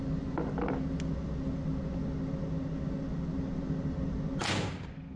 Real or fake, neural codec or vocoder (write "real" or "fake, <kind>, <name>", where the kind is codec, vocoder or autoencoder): real